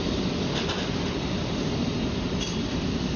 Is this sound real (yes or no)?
yes